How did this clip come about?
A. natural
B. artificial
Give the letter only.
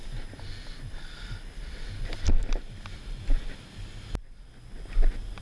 A